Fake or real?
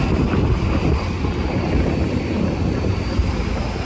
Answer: real